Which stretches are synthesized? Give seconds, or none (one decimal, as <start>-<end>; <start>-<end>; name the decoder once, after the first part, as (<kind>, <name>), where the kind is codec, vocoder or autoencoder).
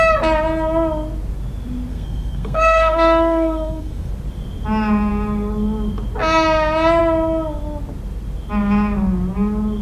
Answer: 1.9-4.1 (codec, SNAC)